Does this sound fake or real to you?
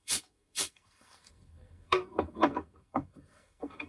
fake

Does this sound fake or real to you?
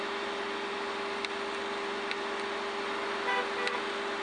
real